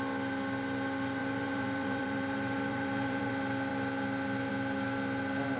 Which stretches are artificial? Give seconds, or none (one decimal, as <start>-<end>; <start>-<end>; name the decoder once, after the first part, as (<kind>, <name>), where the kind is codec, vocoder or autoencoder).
1.2-3.3 (vocoder, BigVGAN v2)